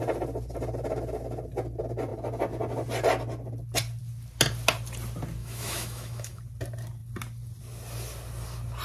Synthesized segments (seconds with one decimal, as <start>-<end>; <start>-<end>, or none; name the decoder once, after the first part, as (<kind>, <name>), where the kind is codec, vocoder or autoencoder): 5.4-6.4 (autoencoder, DAC-VAE)